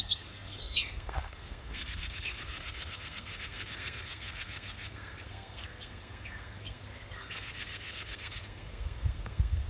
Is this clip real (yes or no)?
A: no